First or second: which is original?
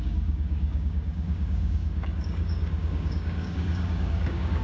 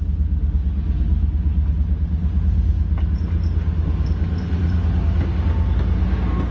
second